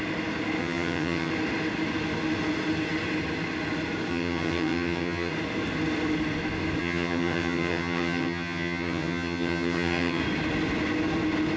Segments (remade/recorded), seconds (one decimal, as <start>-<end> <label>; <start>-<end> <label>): 0.0-0.6 recorded; 0.6-1.3 remade; 1.3-4.1 recorded; 4.1-5.3 remade; 5.3-6.8 recorded; 6.8-10.2 remade; 10.2-11.6 recorded